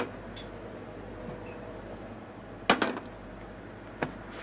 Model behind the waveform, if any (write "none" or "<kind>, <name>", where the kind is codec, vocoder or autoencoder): none